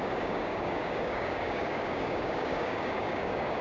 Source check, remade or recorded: remade